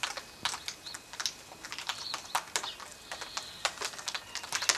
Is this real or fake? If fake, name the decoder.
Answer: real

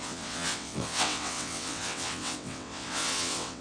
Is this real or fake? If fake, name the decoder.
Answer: fake, vocoder, WaveNeXt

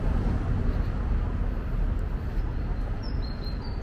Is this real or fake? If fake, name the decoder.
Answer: real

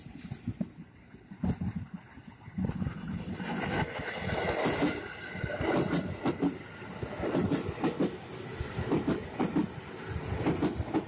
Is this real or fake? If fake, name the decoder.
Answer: real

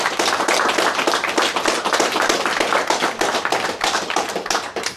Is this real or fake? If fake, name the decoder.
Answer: real